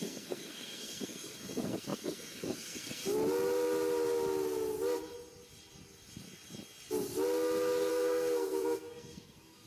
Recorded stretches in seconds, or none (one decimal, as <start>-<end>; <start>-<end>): 3.0-7.9